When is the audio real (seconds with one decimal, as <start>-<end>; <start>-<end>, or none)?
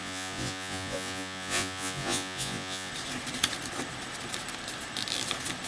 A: 2.9-5.7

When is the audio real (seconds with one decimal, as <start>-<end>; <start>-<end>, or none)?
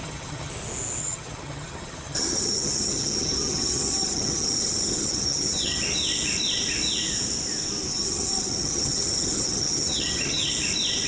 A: 0.5-1.0; 5.8-7.9; 10.5-11.1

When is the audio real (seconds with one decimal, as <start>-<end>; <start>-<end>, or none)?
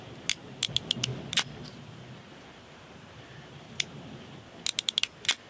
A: 0.0-1.1; 4.4-5.5